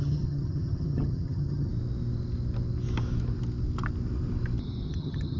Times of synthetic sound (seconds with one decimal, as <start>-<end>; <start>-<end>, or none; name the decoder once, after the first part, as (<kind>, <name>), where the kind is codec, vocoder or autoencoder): 0.0-1.7 (vocoder, HiFi-GAN); 4.9-5.4